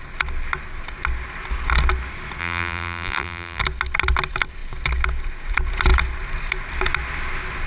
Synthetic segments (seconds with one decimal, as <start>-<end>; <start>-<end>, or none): 2.4-3.6